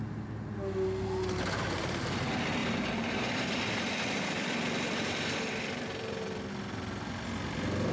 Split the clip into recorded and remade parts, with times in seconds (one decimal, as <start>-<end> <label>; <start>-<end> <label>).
0.0-2.6 recorded; 2.6-6.5 remade; 6.5-7.9 recorded